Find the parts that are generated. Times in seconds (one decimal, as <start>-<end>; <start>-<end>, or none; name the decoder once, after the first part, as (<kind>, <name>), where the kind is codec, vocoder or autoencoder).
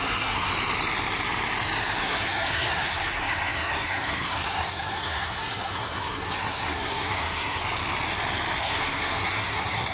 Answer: 0.0-0.5 (codec, SNAC); 2.0-7.6; 8.6-9.9